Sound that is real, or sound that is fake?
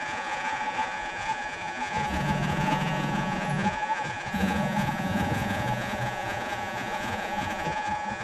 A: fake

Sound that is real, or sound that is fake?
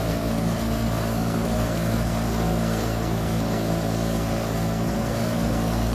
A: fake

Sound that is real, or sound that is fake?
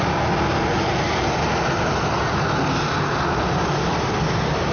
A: real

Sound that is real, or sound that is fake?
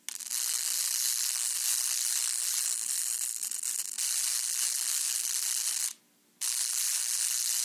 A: real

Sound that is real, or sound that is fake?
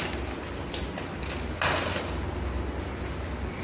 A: real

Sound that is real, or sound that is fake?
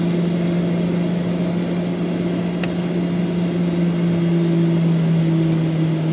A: real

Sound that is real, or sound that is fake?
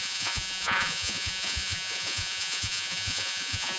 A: fake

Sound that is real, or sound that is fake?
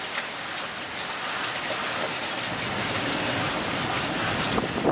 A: real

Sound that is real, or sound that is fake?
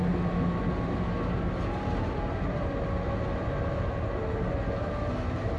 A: real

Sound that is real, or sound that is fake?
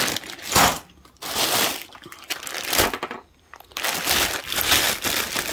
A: real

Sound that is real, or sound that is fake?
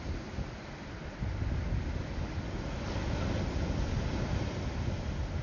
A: real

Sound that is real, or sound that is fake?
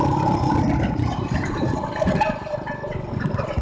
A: real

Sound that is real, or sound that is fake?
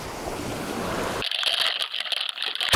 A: real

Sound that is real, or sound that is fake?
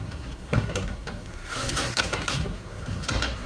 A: fake